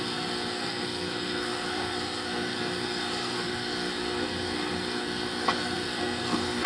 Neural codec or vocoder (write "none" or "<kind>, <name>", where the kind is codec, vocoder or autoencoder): codec, SNAC